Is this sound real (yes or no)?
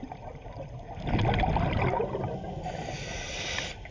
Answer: yes